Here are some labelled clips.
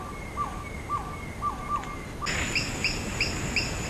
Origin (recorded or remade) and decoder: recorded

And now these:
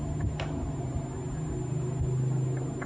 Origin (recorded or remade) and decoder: recorded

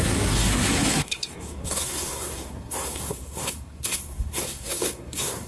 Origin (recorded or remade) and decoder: remade, codec, SNAC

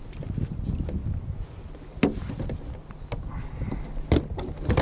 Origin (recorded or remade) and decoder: recorded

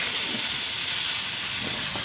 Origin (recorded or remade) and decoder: recorded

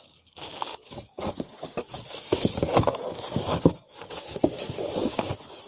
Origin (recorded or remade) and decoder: remade, codec, DAC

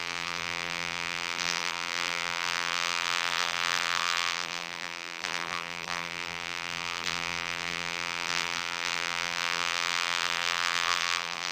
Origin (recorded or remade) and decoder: remade, vocoder, BigVGAN v2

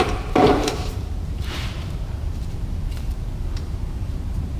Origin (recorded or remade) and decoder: remade, vocoder, BigVGAN v2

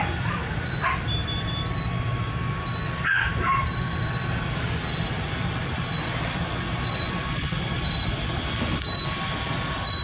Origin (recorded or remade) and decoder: remade, vocoder, BigVGAN v2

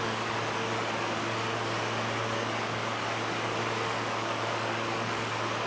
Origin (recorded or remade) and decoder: remade, codec, DAC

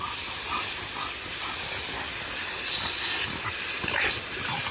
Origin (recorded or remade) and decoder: recorded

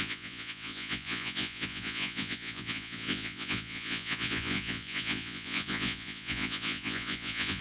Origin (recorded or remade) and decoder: remade, vocoder, Vocos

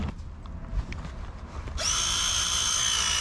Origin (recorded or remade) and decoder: recorded